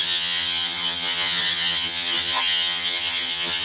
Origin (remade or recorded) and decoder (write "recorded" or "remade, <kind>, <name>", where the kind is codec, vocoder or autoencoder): remade, vocoder, HiFi-GAN